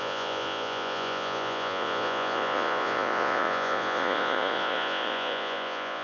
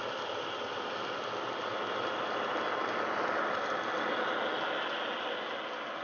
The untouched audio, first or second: second